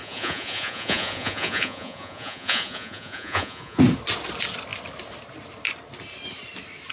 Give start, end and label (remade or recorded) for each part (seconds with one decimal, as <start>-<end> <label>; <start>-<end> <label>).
0.0-3.8 remade; 3.8-6.9 recorded